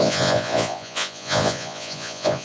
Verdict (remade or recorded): remade